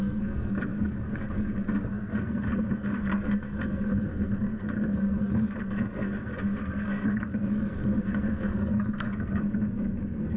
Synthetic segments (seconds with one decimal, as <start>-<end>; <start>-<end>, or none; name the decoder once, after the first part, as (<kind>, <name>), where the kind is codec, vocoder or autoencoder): 0.0-10.4 (codec, SNAC)